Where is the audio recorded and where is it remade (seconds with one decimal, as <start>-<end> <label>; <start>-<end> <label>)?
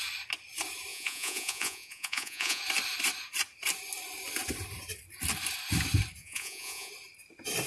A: 0.0-0.9 recorded; 0.9-2.6 remade; 2.6-6.2 recorded; 6.2-6.9 remade; 6.9-7.7 recorded